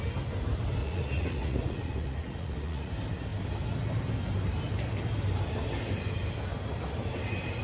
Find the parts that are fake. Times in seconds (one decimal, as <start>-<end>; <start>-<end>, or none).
0.8-2.9

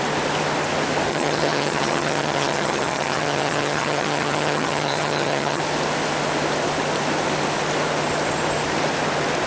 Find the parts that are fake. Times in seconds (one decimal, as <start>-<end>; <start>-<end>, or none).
1.1-5.6